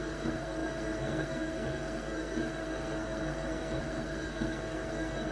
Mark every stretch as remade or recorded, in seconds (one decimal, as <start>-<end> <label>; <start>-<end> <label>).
0.0-5.3 remade